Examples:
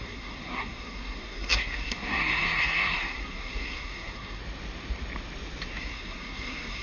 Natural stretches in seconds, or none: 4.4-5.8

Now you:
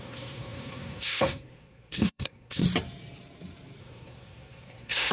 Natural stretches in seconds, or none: 2.6-3.8

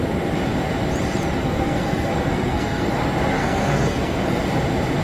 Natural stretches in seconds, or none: 0.0-1.4; 3.0-3.4; 4.4-5.0

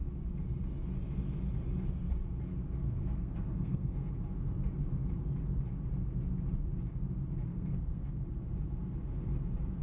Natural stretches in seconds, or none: 0.0-3.0; 4.1-7.5; 8.1-9.8

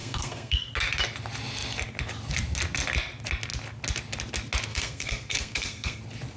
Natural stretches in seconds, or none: 0.7-4.7; 6.0-6.4

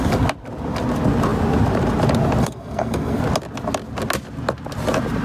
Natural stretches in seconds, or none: 0.0-2.4; 3.2-5.2

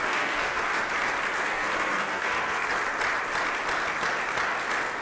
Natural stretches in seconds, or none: 0.7-1.4; 2.7-5.0

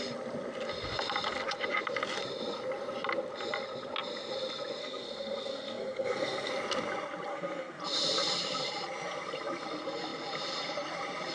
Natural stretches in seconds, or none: 0.0-4.8; 6.5-7.3; 7.8-11.3